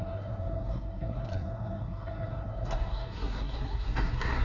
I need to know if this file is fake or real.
fake